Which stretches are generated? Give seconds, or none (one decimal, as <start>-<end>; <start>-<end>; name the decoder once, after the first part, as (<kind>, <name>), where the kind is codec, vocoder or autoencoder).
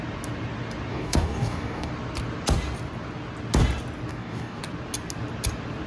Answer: 0.9-1.9 (codec, DAC); 4.1-4.6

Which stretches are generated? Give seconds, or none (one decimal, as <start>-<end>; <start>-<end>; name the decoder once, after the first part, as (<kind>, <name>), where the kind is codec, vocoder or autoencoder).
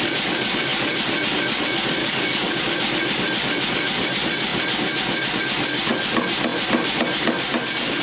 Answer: 2.0-2.6 (codec, DAC)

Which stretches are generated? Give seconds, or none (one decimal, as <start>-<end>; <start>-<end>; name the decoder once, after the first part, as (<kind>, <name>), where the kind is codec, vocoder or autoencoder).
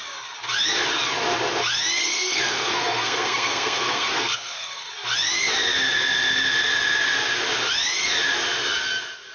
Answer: 2.0-4.9 (codec, SNAC)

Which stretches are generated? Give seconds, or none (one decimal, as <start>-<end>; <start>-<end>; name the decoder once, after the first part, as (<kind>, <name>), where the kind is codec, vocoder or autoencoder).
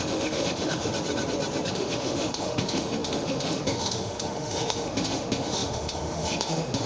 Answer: 0.0-0.9 (autoencoder, DAC-VAE); 1.7-6.9